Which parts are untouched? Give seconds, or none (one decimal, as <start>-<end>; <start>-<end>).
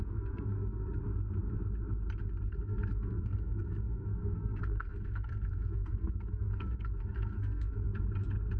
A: 1.0-2.5; 7.9-8.6